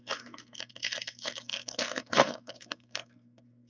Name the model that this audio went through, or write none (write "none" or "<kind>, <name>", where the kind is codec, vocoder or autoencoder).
codec, SNAC